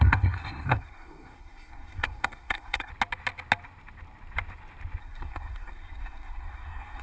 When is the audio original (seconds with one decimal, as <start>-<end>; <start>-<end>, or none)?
2.9-5.0